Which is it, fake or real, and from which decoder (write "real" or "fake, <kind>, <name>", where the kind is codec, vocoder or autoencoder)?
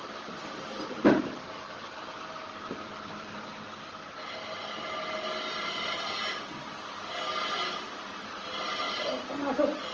real